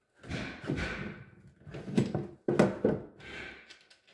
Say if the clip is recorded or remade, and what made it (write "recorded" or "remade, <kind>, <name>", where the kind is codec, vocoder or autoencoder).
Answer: recorded